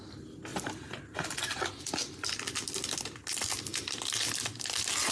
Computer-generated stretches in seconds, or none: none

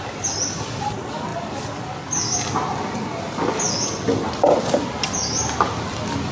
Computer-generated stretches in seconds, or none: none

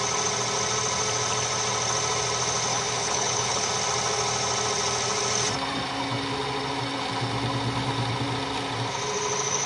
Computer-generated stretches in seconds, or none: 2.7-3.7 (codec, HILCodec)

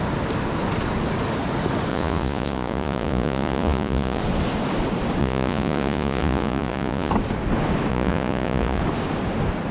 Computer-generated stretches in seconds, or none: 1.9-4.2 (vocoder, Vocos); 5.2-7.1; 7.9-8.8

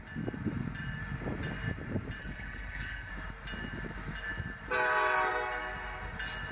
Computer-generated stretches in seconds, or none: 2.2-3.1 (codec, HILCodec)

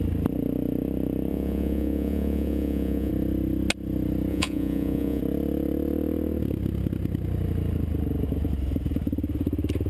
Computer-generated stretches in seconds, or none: 1.3-3.1 (vocoder, Vocos); 4.3-5.2